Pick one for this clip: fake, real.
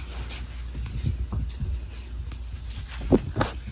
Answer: real